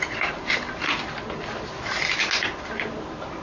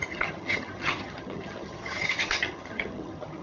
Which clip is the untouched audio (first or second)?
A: first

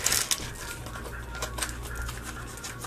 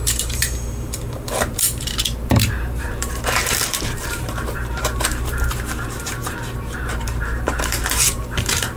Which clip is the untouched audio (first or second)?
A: first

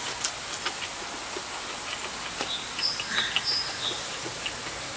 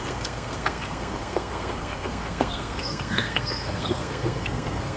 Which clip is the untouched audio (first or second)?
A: first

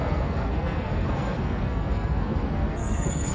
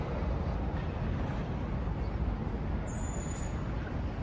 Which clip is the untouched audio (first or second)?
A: second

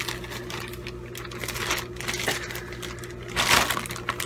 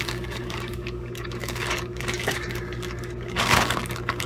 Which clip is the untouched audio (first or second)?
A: first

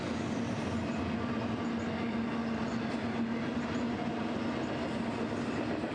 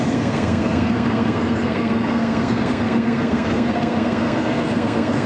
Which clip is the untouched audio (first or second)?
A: first